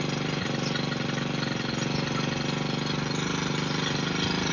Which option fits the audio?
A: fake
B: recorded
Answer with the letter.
B